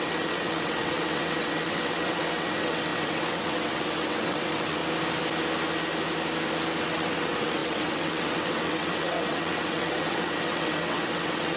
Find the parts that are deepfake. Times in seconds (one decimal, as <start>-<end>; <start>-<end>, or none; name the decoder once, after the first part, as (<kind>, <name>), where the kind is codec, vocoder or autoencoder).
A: 0.0-4.8 (vocoder, WaveNeXt); 6.8-11.6